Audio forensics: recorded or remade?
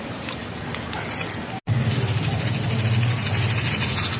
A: recorded